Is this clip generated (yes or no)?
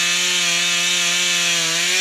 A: no